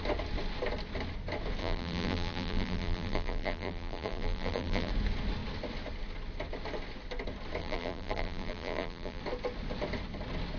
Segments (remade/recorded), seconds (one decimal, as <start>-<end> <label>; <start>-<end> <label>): 0.0-1.6 recorded; 1.6-4.9 remade; 4.9-7.6 recorded; 7.6-9.2 remade; 9.2-10.6 recorded